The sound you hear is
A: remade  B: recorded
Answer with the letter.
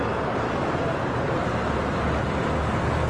B